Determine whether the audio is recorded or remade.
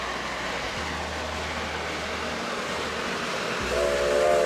recorded